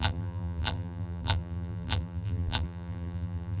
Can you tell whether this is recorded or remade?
remade